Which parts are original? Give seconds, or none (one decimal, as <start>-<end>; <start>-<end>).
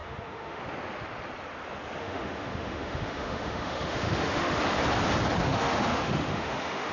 0.6-2.0; 4.6-5.5